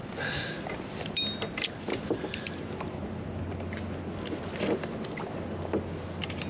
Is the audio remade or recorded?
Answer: recorded